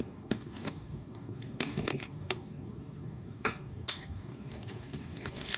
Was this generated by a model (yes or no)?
yes